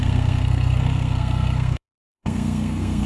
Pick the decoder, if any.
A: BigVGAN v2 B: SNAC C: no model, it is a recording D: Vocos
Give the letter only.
B